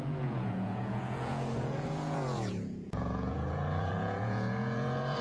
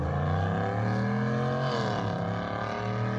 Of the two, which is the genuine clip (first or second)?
second